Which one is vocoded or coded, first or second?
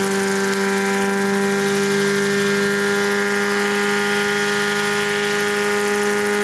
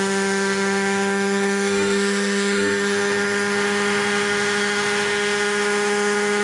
second